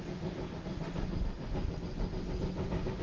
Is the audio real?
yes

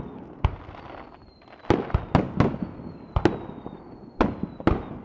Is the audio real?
yes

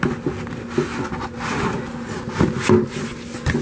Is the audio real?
yes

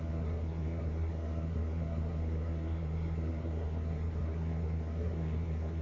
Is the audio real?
no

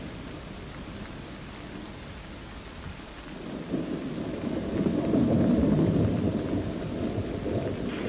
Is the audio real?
yes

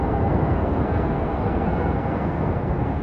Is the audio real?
no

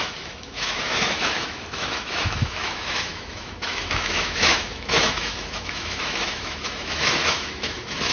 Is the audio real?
no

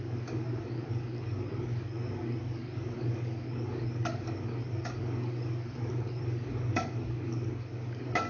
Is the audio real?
no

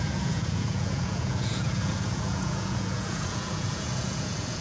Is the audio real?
no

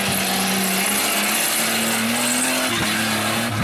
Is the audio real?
yes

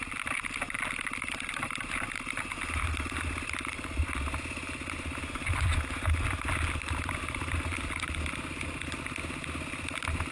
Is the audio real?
yes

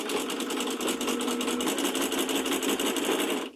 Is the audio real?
yes